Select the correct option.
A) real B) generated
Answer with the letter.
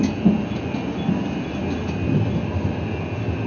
A